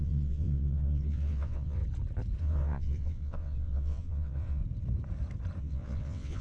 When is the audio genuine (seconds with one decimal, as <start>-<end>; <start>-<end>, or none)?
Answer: 1.8-2.4; 4.6-5.6